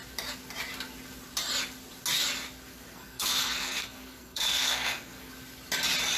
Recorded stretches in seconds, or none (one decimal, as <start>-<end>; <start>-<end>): 0.0-2.7; 5.3-6.2